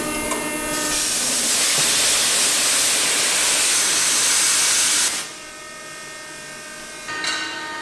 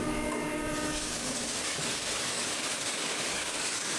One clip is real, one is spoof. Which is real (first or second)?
first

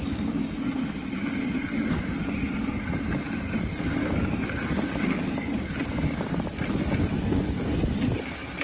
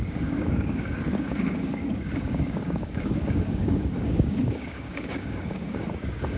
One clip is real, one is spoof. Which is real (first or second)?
first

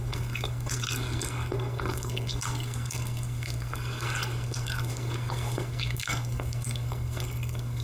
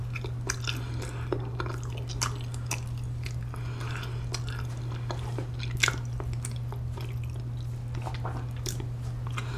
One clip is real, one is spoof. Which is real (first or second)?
second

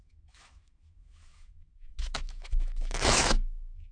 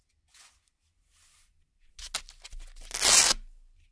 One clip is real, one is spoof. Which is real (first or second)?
second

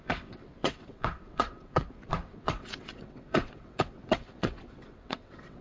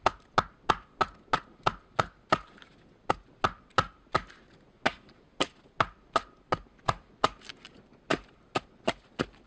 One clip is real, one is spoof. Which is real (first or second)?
second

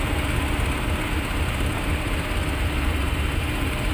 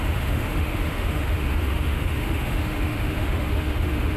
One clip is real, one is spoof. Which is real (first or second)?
first